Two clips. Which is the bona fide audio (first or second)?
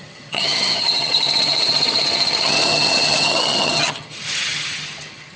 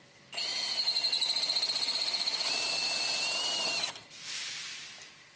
second